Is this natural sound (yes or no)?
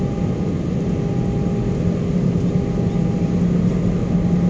yes